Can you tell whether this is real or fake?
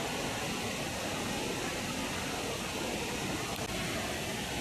real